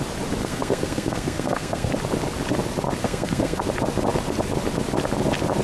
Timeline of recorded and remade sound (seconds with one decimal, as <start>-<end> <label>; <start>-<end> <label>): 0.0-0.4 recorded; 0.4-1.9 remade; 1.9-3.0 recorded; 3.0-3.6 remade; 3.6-5.6 recorded